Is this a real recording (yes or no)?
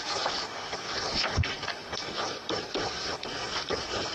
no